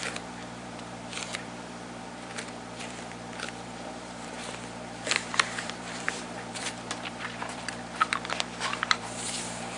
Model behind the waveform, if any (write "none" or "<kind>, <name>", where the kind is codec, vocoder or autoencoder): vocoder, BigVGAN v2